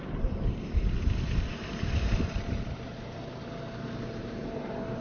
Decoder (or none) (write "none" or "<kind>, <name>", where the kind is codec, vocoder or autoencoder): vocoder, BigVGAN v2